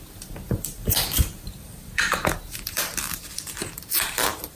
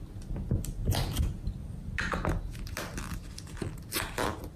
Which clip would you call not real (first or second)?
first